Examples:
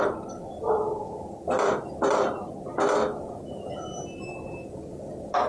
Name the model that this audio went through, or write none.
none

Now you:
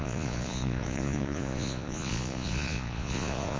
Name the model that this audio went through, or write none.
vocoder, Vocos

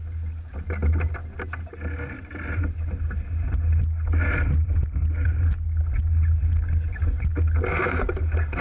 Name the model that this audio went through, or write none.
none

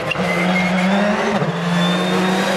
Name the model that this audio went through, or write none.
none